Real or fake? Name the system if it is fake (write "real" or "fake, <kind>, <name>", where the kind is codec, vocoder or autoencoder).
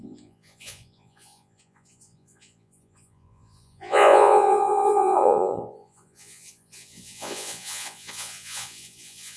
fake, vocoder, Vocos